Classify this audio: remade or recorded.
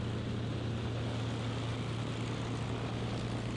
recorded